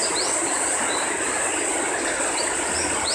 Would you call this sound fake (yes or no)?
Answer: no